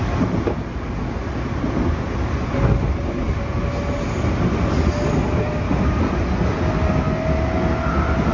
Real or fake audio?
real